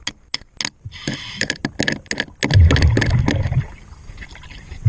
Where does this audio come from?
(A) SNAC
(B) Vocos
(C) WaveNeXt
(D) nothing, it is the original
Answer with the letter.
D